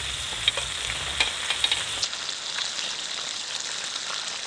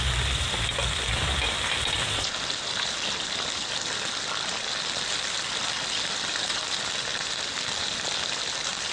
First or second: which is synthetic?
second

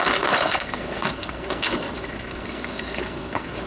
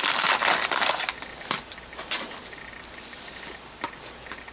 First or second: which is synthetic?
first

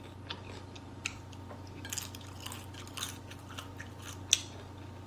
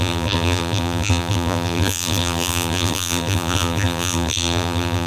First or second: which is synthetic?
second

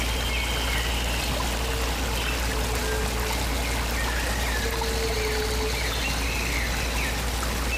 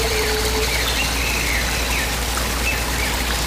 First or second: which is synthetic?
second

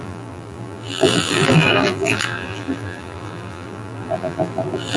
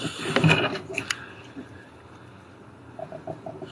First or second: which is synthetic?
first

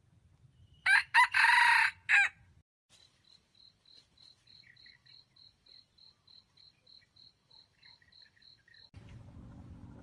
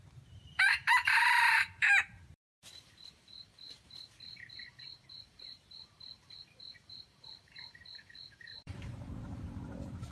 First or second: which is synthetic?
second